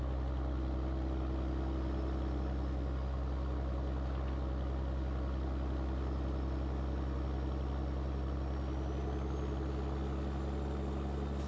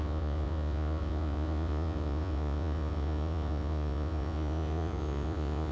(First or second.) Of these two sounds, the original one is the first